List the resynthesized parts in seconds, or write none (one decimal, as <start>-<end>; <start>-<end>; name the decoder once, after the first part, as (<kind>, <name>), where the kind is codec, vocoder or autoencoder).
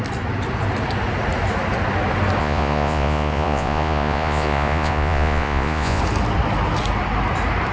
2.4-6.0 (vocoder, Vocos)